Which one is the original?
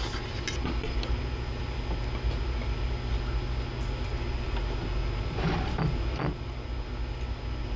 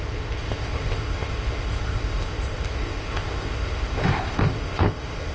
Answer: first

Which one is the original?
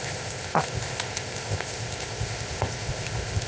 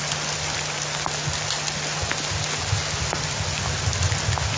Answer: second